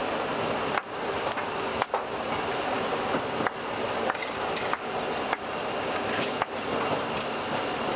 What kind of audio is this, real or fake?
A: real